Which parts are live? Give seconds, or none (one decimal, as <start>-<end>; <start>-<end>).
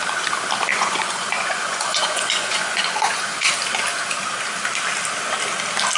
0.0-0.7; 3.5-6.0